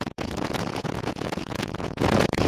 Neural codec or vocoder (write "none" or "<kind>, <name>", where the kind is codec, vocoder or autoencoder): vocoder, Vocos